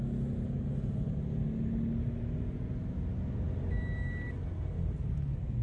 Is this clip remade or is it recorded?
recorded